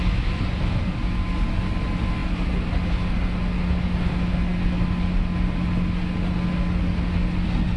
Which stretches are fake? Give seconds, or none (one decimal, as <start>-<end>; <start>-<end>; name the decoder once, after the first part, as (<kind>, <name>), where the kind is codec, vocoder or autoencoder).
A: none